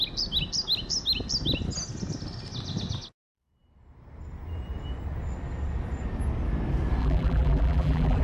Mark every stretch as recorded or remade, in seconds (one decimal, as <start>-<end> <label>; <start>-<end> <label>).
0.0-7.0 recorded; 7.0-8.2 remade

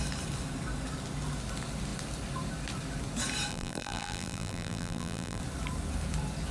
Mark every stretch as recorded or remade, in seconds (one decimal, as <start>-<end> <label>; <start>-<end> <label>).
0.0-3.5 recorded; 3.5-5.4 remade; 5.4-6.5 recorded

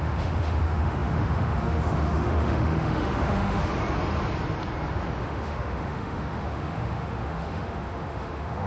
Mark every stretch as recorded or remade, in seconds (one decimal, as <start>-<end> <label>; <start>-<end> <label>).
0.0-3.7 remade; 3.7-5.2 recorded; 5.2-8.7 remade

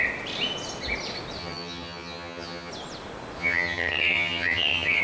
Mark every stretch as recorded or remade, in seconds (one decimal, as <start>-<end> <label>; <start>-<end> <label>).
0.0-1.4 recorded; 1.4-2.7 remade; 2.7-3.4 recorded; 3.4-5.0 remade

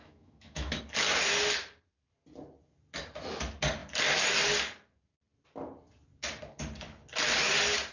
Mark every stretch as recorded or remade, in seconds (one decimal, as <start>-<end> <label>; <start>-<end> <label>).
0.0-0.8 remade; 0.8-7.9 recorded

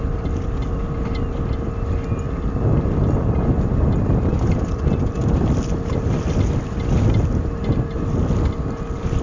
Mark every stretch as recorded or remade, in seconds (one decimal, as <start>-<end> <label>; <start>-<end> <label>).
0.0-4.3 recorded; 4.3-5.2 remade; 5.2-9.2 recorded